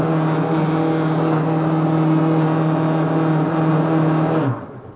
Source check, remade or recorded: recorded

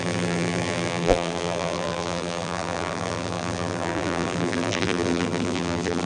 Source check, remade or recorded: remade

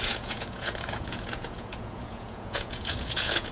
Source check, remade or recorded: remade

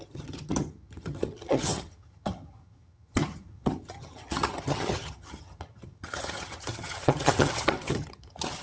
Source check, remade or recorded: remade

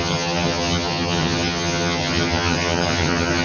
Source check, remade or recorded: remade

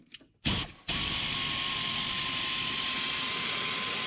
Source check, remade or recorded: recorded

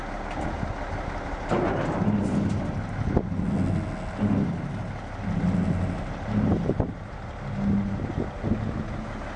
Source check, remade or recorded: recorded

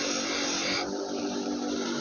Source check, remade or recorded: recorded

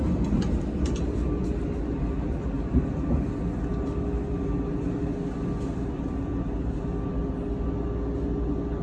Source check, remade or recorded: recorded